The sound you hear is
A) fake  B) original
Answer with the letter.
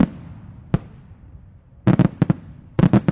B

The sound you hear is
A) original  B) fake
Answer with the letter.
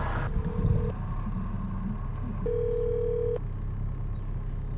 A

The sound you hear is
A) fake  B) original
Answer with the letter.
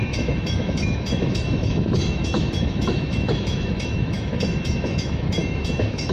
A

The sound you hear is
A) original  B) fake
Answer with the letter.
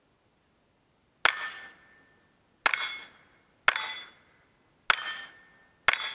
A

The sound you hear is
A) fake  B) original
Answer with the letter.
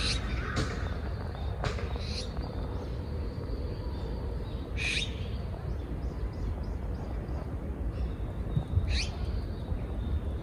B